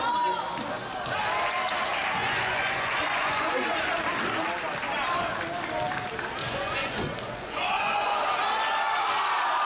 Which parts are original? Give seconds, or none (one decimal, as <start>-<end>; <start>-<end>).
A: 0.0-2.2; 4.1-6.4; 8.3-9.6